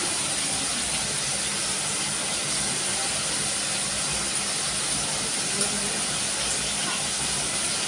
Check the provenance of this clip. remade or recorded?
recorded